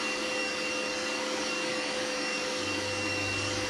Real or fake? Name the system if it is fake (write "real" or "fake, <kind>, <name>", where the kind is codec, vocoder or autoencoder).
fake, codec, DAC